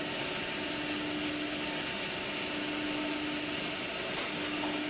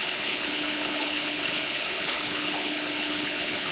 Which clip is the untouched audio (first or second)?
first